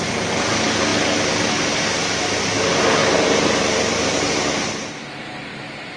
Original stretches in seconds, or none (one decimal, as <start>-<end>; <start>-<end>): 0.0-3.0; 4.7-5.5